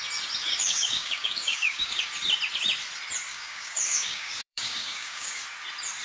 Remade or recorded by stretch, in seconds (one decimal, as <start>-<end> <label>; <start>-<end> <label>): 0.0-0.4 recorded; 0.4-2.0 remade; 2.0-3.3 recorded; 3.3-5.4 remade; 5.4-6.0 recorded